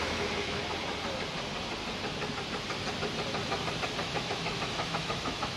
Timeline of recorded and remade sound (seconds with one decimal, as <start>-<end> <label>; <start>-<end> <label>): 0.0-0.6 remade; 0.6-4.0 recorded; 4.0-5.6 remade